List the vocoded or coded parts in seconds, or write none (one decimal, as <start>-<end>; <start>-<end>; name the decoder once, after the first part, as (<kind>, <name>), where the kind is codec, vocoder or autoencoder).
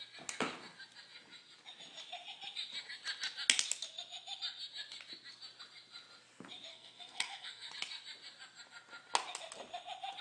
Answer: 6.7-7.7 (codec, SNAC)